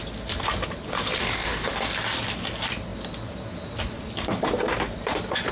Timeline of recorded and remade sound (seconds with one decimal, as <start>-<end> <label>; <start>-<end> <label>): 0.0-1.2 recorded; 1.2-1.7 remade; 1.7-5.5 recorded